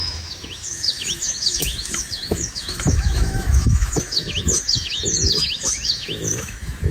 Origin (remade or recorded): remade